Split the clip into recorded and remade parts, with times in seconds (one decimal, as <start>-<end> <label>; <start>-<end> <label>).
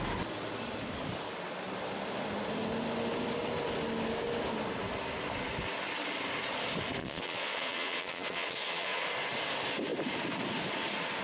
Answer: 0.0-7.0 recorded; 7.0-9.0 remade; 9.0-11.2 recorded